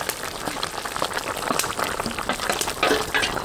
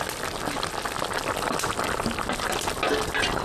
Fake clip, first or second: first